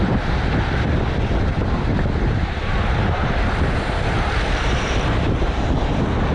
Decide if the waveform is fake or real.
fake